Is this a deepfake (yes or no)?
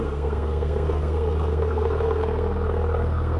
yes